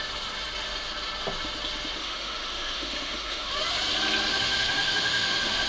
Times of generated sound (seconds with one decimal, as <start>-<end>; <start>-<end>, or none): 2.0-3.5; 4.3-5.7